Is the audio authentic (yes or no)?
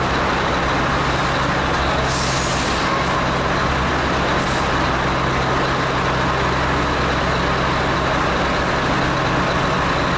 yes